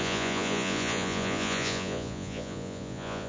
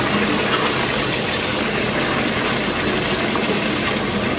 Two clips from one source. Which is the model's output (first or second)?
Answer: first